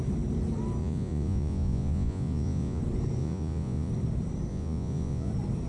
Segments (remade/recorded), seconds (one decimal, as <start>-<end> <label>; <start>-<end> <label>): 0.0-0.8 recorded; 0.8-2.8 remade; 2.8-3.2 recorded; 3.2-3.9 remade; 3.9-4.5 recorded; 4.5-5.3 remade; 5.3-5.7 recorded